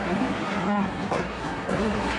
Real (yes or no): no